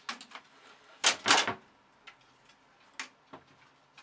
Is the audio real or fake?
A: real